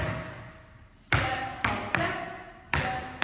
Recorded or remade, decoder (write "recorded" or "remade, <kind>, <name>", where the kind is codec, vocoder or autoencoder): recorded